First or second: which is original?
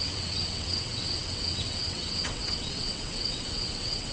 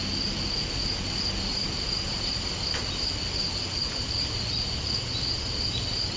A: second